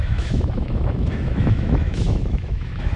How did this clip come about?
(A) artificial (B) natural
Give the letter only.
A